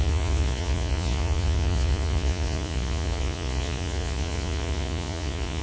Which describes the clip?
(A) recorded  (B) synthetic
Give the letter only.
B